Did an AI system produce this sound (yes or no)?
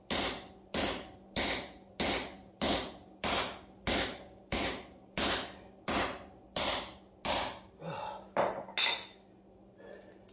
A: no